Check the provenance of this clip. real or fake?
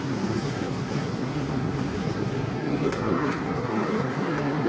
fake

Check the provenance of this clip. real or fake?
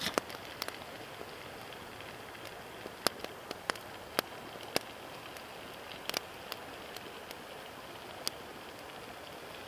real